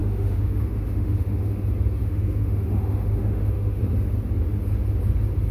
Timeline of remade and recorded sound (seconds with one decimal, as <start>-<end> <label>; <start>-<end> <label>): 0.0-1.6 remade; 1.6-2.0 recorded; 2.0-3.8 remade; 3.8-5.5 recorded

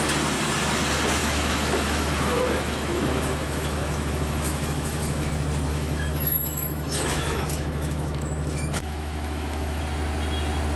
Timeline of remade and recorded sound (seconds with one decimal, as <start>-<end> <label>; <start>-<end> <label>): 0.0-1.2 recorded; 1.2-5.3 remade; 5.3-5.7 recorded; 5.7-9.8 remade; 9.8-10.8 recorded

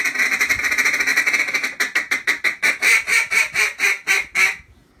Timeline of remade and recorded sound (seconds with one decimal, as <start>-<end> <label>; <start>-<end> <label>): 0.0-5.0 recorded

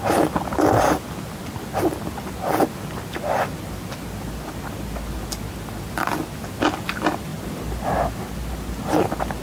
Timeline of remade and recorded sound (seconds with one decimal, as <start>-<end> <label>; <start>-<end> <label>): 0.0-9.4 recorded

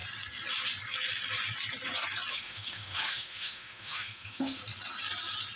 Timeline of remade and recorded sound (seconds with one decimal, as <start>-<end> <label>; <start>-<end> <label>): 0.0-2.3 recorded; 2.3-4.6 remade; 4.6-5.6 recorded